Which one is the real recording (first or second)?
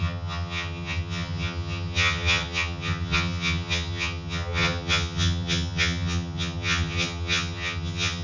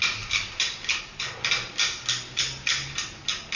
second